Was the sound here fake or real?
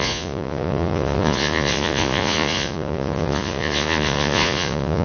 fake